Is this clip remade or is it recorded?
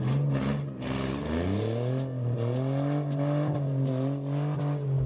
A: recorded